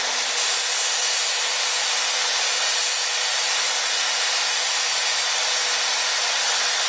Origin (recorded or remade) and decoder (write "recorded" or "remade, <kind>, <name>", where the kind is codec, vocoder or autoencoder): recorded